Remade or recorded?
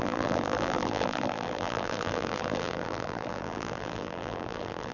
remade